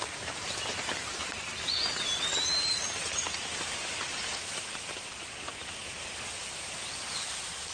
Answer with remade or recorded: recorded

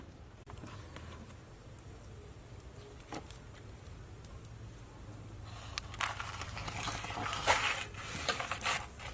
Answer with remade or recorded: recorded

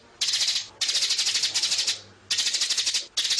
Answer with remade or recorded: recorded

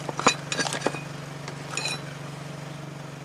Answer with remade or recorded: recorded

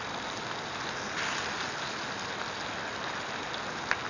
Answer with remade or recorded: recorded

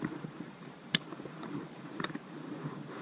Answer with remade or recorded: remade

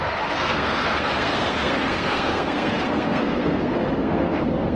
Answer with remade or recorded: remade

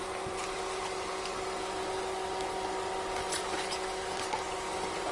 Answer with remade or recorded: recorded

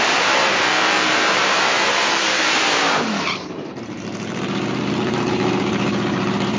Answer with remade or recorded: remade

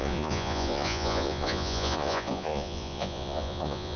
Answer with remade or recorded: remade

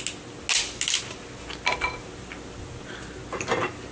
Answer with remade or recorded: recorded